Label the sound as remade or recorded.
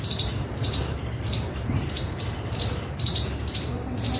remade